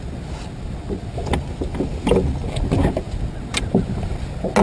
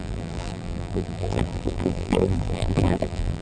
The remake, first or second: second